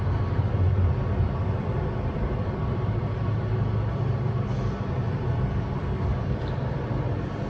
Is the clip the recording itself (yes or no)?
no